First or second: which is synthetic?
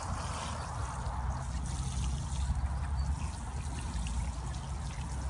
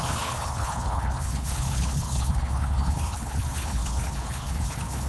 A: second